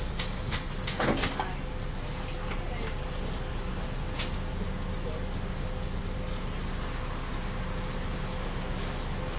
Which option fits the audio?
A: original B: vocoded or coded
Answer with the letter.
A